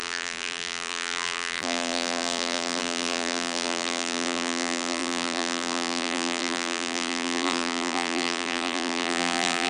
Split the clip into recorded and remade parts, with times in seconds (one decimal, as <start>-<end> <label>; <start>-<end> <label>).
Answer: 0.0-9.7 remade